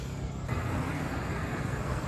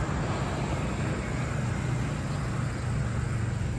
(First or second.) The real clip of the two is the second